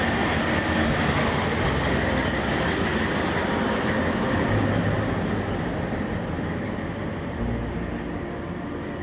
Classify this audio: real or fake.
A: real